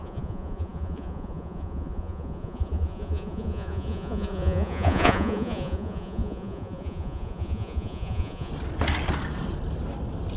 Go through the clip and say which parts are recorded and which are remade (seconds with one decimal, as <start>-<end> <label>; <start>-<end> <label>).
0.0-8.5 remade; 8.5-10.4 recorded